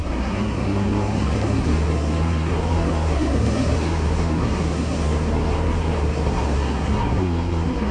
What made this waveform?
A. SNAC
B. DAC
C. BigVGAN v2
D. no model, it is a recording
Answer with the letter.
A